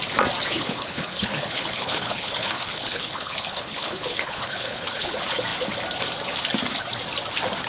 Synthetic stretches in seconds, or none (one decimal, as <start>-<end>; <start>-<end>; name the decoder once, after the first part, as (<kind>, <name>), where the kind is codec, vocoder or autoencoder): 0.5-5.1 (codec, HILCodec)